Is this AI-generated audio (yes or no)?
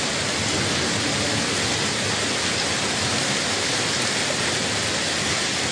no